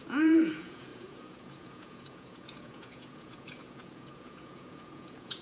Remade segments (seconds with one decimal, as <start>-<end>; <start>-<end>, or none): 0.0-5.4

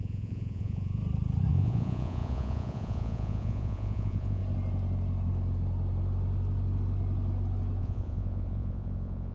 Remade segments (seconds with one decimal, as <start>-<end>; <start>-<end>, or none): 0.0-1.0; 1.5-4.4; 7.8-9.3

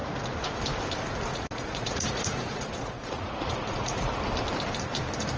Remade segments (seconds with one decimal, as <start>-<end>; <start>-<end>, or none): 0.0-0.6; 1.3-4.2

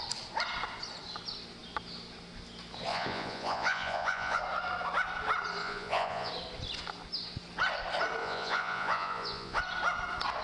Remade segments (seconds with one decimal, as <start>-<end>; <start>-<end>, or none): 2.9-4.4; 5.6-6.3; 8.2-9.6

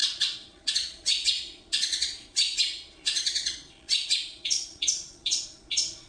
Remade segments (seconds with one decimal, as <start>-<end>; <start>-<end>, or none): 0.0-6.1

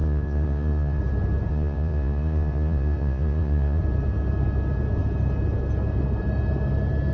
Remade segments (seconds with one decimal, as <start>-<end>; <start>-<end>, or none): 0.0-1.0; 1.5-3.8

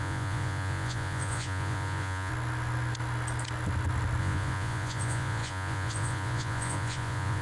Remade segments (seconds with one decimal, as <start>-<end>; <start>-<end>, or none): 0.0-2.3; 4.2-7.4

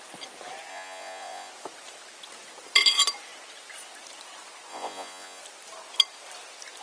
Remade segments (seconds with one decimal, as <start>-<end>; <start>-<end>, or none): 0.7-1.5; 4.7-5.4